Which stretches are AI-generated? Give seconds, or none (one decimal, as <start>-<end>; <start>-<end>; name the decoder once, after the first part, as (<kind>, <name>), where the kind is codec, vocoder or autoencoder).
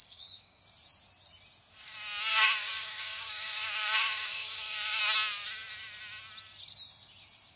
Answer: 0.0-0.6 (codec, DAC); 2.3-5.0